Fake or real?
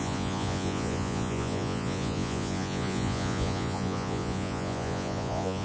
fake